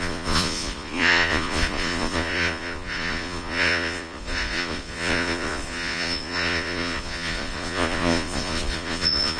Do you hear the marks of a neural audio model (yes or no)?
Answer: yes